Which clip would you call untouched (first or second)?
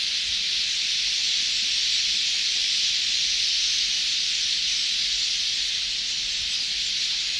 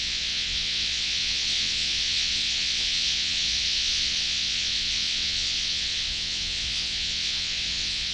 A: first